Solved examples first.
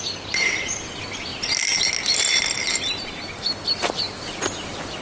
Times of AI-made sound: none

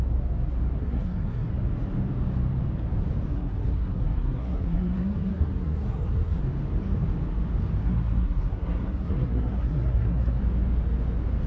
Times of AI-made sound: 0.8-1.5 (codec, SNAC); 3.3-6.4; 7.8-10.4

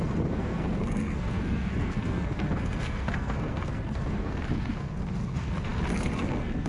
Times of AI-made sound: 0.0-6.7 (codec, SNAC)

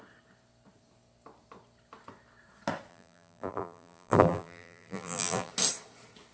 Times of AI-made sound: 2.9-5.5 (vocoder, BigVGAN v2)